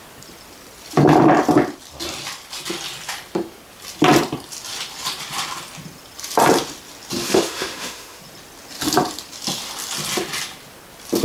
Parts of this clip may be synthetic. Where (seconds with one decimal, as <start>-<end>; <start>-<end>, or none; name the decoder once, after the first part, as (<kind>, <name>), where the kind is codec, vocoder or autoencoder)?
7.2-8.2 (autoencoder, DAC-VAE)